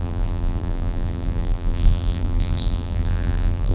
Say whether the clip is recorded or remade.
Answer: remade